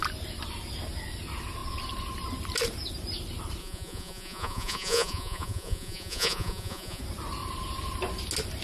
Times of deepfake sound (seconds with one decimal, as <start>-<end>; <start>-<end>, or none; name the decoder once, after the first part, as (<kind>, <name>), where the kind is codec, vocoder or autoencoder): 3.6-7.0 (vocoder, Vocos)